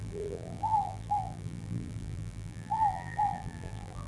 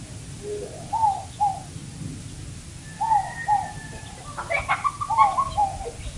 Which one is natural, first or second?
second